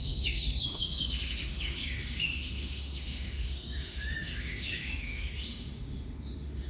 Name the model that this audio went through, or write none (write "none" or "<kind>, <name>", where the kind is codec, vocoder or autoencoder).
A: autoencoder, DAC-VAE